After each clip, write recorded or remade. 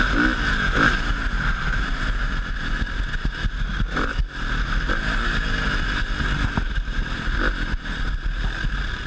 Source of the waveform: recorded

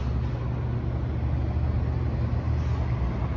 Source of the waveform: recorded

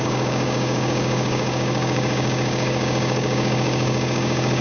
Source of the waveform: remade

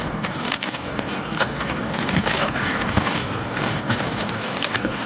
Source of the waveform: remade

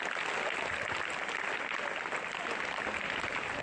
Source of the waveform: recorded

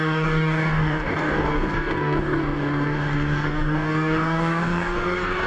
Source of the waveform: remade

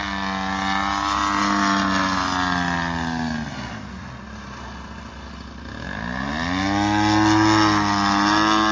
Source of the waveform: recorded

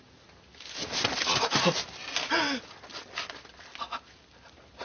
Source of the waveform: recorded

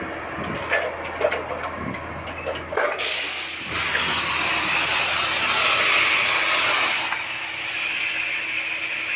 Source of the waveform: recorded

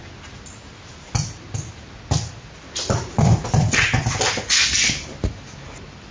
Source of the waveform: recorded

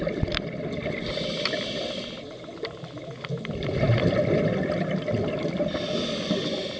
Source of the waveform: recorded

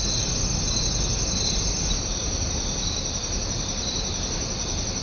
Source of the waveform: recorded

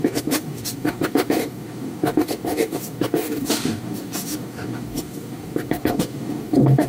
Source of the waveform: remade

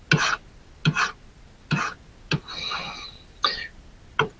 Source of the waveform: recorded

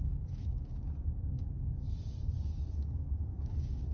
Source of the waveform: remade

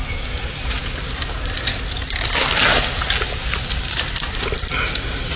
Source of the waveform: recorded